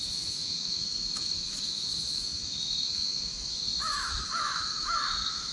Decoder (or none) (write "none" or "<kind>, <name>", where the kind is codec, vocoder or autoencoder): autoencoder, DAC-VAE